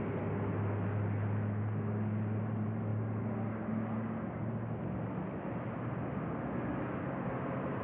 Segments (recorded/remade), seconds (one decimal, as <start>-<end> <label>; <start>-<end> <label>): 0.0-7.8 recorded